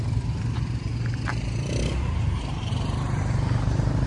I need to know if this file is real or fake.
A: fake